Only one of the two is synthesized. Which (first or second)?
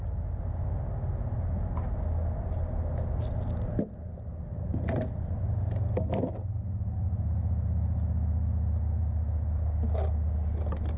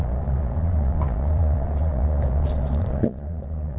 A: second